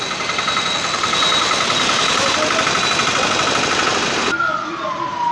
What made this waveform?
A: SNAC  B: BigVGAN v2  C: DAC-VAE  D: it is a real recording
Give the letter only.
D